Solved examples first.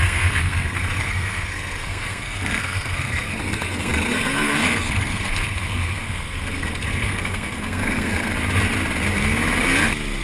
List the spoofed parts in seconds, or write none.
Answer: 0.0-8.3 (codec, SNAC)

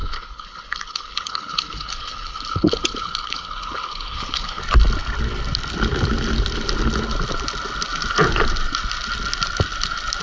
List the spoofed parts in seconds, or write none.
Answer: 0.0-4.6 (codec, HILCodec)

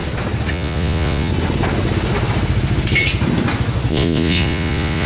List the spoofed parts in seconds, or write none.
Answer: 0.5-1.3 (vocoder, Vocos); 3.9-5.1

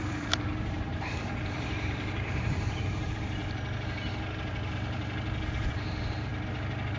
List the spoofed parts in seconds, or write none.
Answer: 0.0-0.9 (vocoder, BigVGAN v2); 1.6-3.4; 5.5-6.3

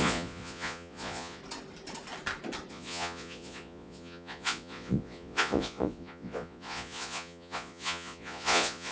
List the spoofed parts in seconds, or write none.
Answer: 0.0-1.4 (vocoder, Vocos); 2.7-8.9

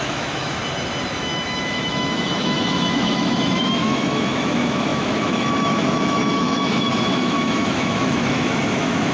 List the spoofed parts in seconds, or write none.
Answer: 0.0-0.6 (autoencoder, DAC-VAE); 1.1-9.1

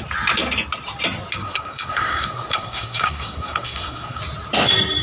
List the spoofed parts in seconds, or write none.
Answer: 1.4-4.2 (codec, SNAC)

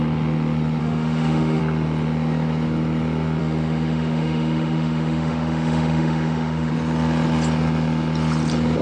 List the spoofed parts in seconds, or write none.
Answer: 0.8-1.6 (autoencoder, DAC-VAE); 3.4-6.7